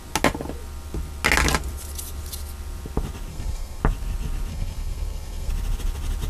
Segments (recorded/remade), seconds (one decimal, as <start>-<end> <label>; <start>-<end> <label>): 0.0-3.3 recorded; 3.3-3.8 remade; 3.8-4.5 recorded; 4.5-5.5 remade; 5.5-6.3 recorded